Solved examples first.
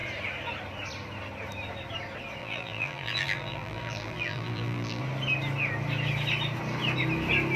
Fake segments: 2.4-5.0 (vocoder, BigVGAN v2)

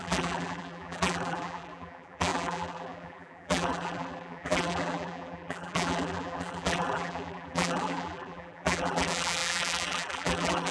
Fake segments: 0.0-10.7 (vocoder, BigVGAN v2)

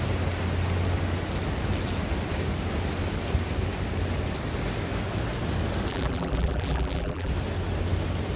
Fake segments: 5.9-7.3 (vocoder, BigVGAN v2)

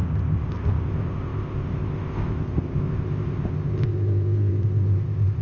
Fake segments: 0.0-5.4 (codec, ZipCodec)

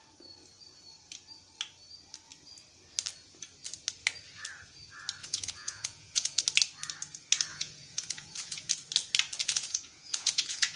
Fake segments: 5.2-6.4 (vocoder, Vocos); 7.5-8.7; 9.4-10.8